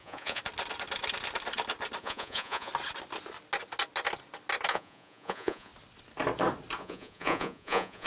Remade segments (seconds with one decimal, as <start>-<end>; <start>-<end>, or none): 0.0-0.4; 2.0-2.7; 4.7-5.7; 6.8-8.1